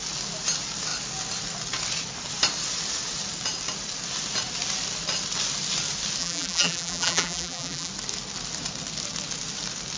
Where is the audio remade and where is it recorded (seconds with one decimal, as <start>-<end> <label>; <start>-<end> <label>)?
0.0-6.2 recorded; 6.2-7.9 remade; 7.9-10.0 recorded